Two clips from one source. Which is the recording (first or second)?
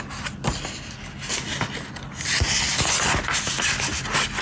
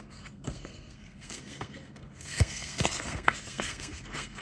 first